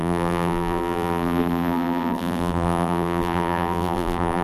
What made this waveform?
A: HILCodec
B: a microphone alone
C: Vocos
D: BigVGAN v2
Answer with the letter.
D